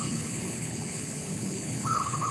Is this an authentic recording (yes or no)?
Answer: no